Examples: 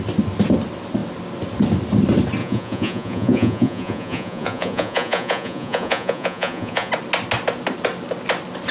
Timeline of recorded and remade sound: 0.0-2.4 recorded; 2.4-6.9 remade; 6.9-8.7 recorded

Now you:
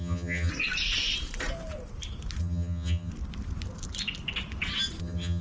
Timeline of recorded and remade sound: 0.0-0.5 remade; 0.5-2.4 recorded; 2.4-3.1 remade; 3.1-5.0 recorded; 5.0-5.4 remade

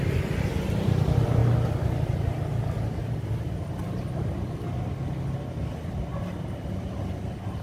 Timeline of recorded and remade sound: 0.0-1.4 remade; 1.4-5.5 recorded; 5.5-6.1 remade; 6.1-7.6 recorded

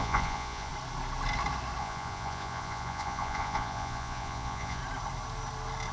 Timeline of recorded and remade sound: 0.0-0.7 remade; 0.7-1.8 recorded; 1.8-4.8 remade; 4.8-5.9 recorded

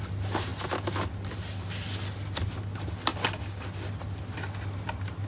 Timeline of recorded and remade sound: 0.0-5.3 recorded

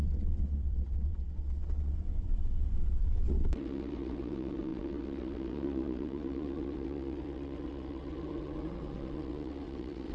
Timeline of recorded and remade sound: 0.0-10.1 remade